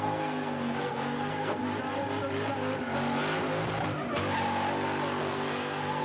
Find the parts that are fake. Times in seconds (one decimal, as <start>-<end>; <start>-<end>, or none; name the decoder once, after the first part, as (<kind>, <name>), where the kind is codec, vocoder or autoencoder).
0.0-1.6 (codec, SNAC); 5.2-6.0